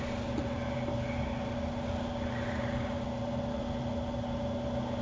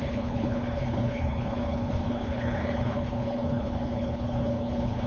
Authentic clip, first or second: first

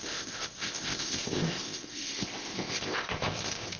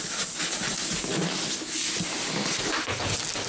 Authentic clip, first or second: second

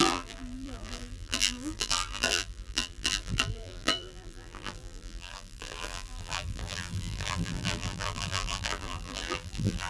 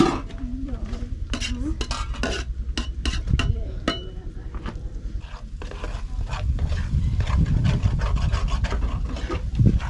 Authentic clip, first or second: second